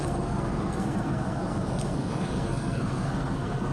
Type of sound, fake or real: fake